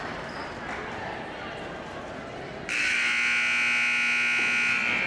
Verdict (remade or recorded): recorded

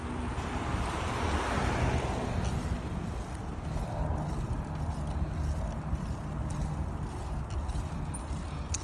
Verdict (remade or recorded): recorded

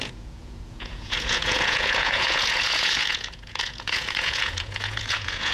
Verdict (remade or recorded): remade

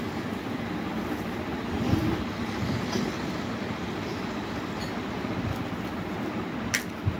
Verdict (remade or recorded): recorded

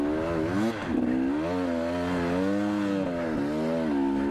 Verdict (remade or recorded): recorded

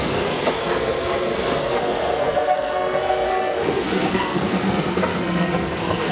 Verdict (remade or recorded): remade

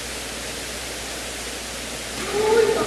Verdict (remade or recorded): recorded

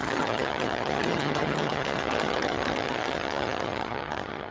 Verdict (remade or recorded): remade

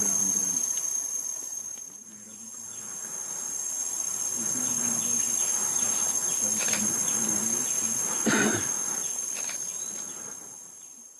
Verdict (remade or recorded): recorded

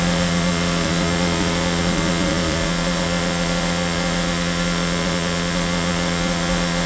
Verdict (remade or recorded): remade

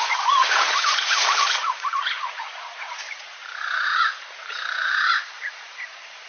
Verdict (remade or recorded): remade